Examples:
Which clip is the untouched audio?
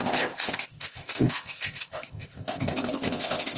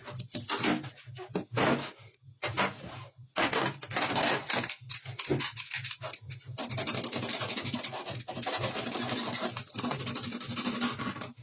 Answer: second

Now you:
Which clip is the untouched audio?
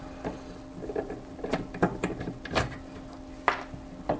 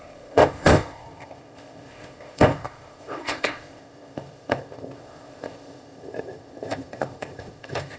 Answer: first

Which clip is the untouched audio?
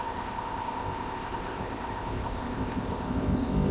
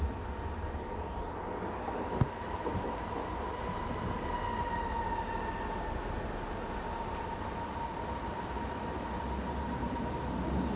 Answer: second